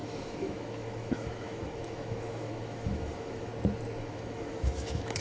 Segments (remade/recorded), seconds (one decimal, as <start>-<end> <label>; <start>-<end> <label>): 0.0-3.5 remade; 3.5-4.0 recorded; 4.0-5.2 remade